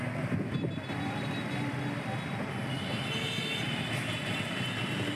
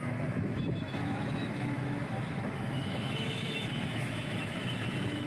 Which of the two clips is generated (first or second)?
second